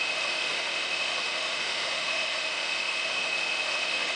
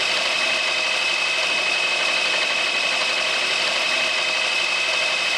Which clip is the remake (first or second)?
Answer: first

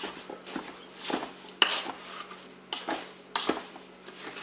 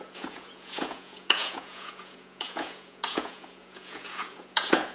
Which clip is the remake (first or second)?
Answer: second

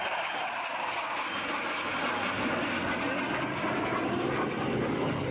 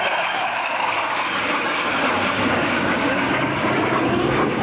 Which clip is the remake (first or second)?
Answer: second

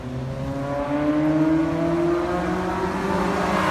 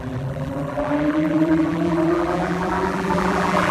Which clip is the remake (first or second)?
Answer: second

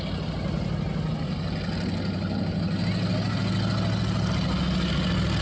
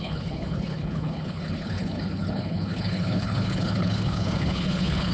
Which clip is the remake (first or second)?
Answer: second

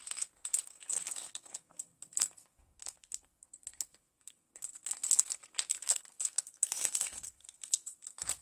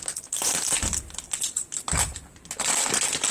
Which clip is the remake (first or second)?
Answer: first